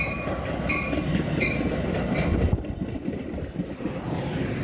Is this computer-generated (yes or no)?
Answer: no